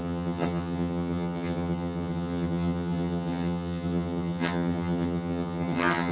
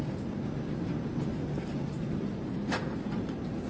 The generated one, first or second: first